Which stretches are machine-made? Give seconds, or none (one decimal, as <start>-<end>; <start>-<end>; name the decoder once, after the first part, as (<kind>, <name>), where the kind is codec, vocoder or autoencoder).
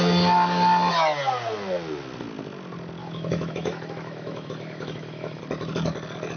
3.0-5.4 (autoencoder, DAC-VAE)